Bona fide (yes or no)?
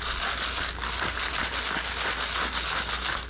yes